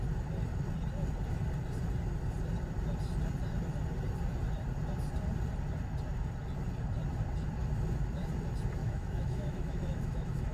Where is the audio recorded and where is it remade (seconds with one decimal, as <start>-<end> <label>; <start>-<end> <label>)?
0.0-8.8 recorded; 8.8-10.5 remade